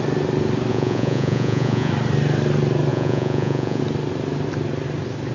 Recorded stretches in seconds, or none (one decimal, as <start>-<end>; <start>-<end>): 0.0-0.7; 1.9-2.9; 3.8-5.3